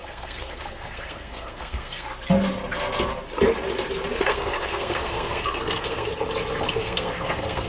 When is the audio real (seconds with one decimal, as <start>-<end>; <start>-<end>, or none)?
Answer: 2.1-4.2; 6.1-6.7